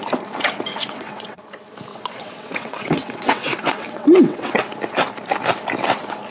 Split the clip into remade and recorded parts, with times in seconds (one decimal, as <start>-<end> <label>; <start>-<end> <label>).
0.0-0.8 recorded; 0.8-1.4 remade; 1.4-1.9 recorded; 1.9-4.6 remade; 4.6-6.3 recorded

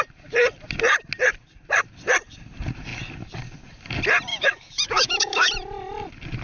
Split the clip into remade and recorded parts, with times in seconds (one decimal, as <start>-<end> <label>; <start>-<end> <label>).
0.0-4.3 recorded; 4.3-5.5 remade; 5.5-6.4 recorded

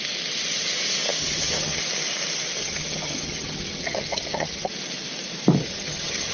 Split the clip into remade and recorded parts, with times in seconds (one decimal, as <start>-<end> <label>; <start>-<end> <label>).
0.0-1.2 recorded; 1.2-1.8 remade; 1.8-2.6 recorded; 2.6-4.7 remade; 4.7-5.6 recorded; 5.6-6.3 remade